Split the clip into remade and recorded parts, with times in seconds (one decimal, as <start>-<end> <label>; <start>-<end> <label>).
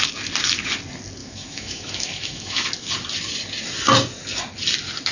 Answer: 0.0-1.2 recorded; 1.2-2.7 remade; 2.7-5.1 recorded